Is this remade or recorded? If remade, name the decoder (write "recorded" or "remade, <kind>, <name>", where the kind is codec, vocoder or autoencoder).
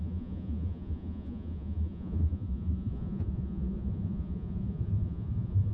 remade, vocoder, Vocos